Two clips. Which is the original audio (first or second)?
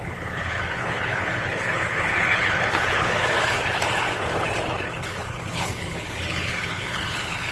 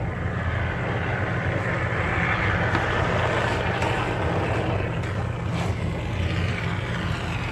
second